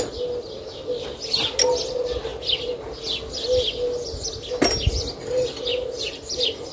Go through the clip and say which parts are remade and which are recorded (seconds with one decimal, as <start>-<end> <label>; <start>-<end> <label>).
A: 0.0-5.7 recorded; 5.7-6.7 remade